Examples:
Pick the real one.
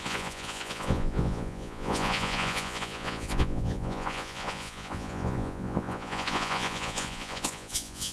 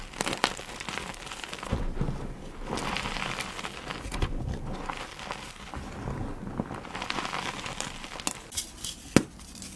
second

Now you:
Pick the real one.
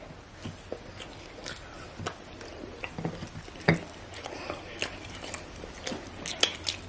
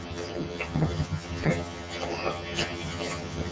first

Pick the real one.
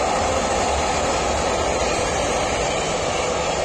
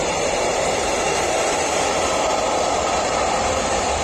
first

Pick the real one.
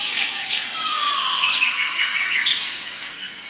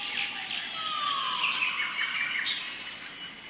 second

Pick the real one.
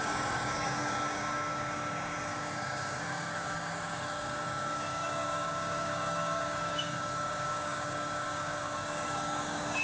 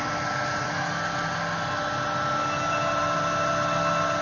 second